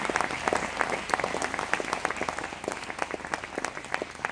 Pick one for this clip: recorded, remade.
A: recorded